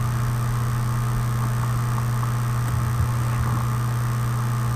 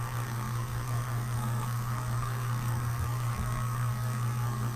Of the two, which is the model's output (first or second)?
second